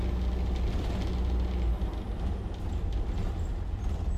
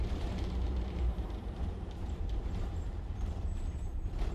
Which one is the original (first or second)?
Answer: first